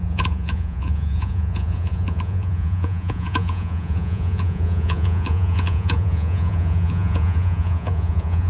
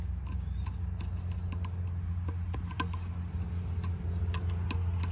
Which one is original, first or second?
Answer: second